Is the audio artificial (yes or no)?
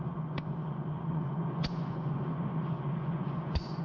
yes